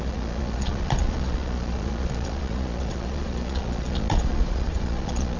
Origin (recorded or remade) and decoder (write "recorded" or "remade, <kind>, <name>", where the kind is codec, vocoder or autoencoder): remade, vocoder, Vocos